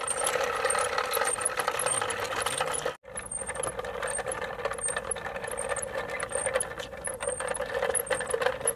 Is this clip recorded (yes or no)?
yes